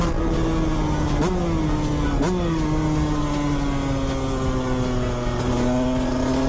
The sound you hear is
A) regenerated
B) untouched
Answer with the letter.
B